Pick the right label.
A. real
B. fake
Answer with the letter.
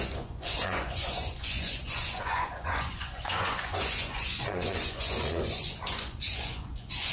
B